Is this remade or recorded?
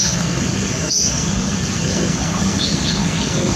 remade